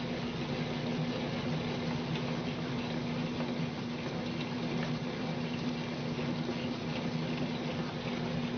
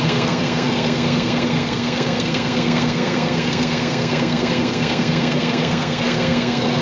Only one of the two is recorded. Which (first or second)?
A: first